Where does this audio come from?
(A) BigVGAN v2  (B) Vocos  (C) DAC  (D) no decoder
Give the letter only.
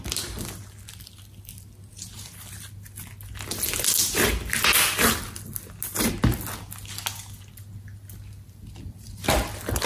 D